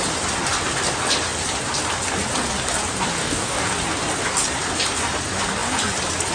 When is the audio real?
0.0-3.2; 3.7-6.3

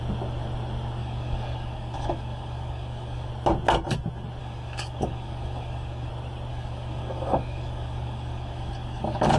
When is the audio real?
0.0-1.0; 3.3-4.4; 6.1-6.5

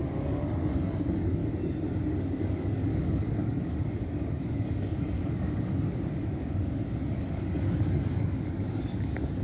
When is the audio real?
1.4-2.2